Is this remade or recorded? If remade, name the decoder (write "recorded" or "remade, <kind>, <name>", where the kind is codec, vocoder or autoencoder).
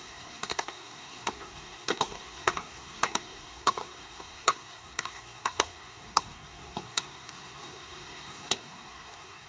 remade, codec, SNAC